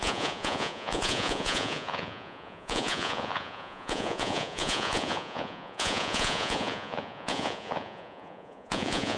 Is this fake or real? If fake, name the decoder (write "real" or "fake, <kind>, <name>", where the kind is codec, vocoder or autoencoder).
fake, vocoder, Vocos